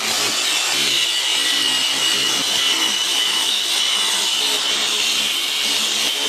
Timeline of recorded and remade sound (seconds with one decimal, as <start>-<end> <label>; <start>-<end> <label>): 0.0-3.1 recorded; 3.1-3.6 remade; 3.6-6.3 recorded